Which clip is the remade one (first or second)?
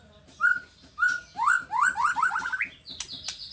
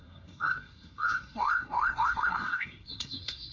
second